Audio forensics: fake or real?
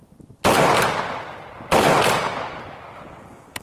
real